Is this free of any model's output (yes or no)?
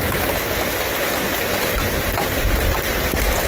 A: yes